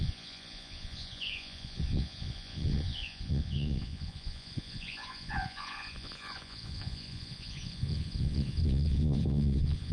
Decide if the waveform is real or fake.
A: fake